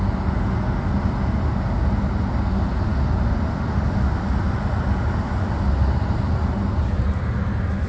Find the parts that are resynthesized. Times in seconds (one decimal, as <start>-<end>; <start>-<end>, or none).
none